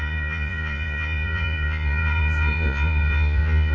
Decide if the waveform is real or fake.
fake